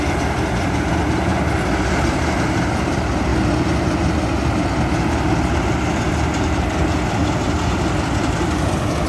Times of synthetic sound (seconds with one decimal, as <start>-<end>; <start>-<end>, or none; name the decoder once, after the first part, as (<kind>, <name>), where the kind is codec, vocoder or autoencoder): 0.0-1.3 (vocoder, BigVGAN v2); 2.1-3.3; 5.9-9.1